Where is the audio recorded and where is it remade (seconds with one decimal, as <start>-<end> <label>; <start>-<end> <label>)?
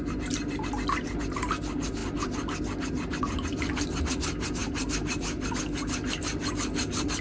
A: 0.0-7.2 recorded